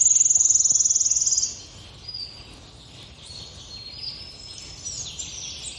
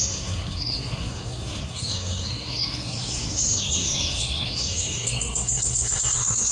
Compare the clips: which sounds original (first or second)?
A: first